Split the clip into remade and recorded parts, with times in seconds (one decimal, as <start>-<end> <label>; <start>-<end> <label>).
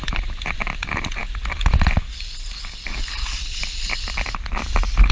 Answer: 0.0-5.1 recorded